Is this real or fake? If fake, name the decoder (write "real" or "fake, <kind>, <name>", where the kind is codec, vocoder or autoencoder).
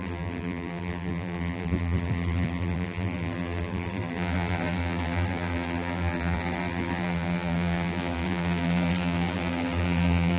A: fake, vocoder, BigVGAN v2